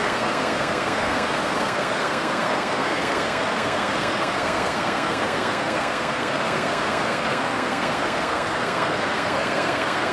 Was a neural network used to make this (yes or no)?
yes